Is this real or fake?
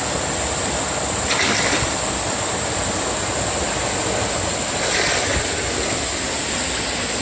real